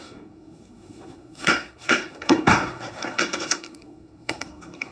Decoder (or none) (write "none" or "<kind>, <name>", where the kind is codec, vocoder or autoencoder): codec, SNAC